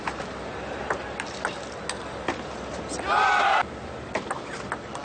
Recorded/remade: recorded